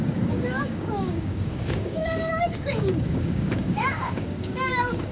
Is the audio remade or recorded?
remade